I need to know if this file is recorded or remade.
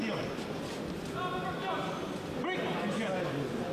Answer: recorded